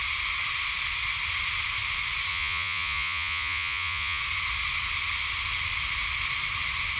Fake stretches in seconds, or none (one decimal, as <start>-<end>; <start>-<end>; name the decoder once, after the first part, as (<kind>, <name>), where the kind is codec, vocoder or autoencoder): 2.3-4.2 (vocoder, Vocos)